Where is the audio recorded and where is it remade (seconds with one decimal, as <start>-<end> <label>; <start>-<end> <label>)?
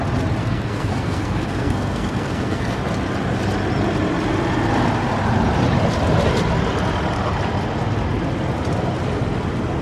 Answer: 0.0-0.4 recorded; 0.4-2.8 remade; 2.8-9.8 recorded